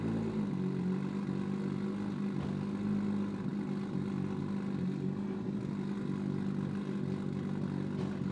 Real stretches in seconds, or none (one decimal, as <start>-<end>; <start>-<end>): 0.0-8.3